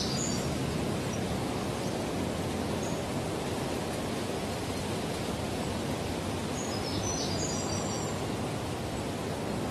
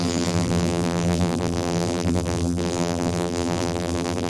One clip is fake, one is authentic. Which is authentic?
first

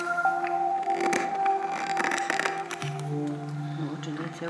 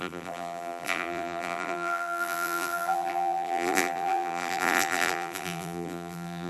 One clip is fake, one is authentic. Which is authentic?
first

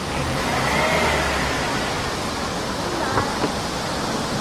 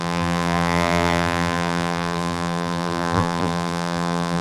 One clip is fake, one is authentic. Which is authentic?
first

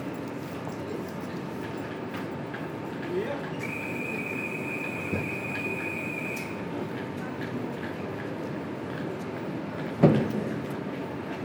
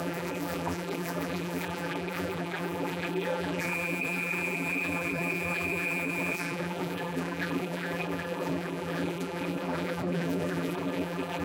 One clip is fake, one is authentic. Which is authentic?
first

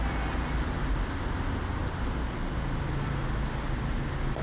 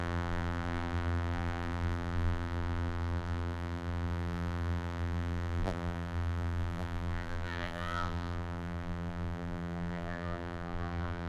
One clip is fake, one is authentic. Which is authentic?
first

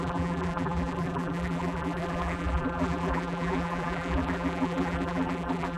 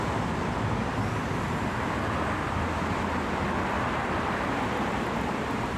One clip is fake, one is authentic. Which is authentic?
second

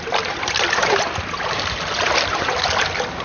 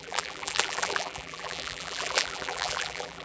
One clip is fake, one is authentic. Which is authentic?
first